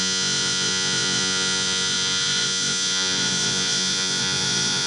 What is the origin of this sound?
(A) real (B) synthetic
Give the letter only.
B